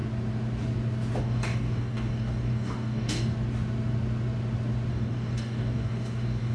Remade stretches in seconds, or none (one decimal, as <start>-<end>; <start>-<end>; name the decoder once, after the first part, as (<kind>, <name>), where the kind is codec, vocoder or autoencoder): 1.2-3.2 (codec, DAC); 4.9-6.5